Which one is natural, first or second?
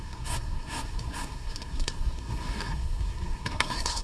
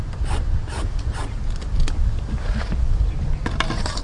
second